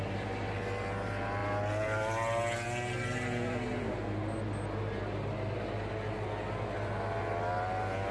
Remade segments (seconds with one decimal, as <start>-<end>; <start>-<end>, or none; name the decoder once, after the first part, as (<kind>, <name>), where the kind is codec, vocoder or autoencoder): none